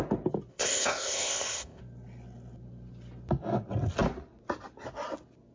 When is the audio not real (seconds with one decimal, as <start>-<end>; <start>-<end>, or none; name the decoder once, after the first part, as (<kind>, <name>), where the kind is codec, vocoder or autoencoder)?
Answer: 0.5-1.8 (codec, ZipCodec)